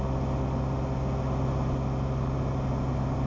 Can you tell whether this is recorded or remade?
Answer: recorded